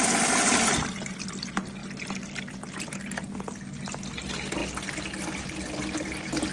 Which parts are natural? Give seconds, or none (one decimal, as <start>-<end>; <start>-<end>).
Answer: 0.0-6.5